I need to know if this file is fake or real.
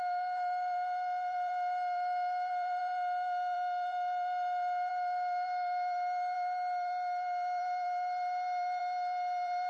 fake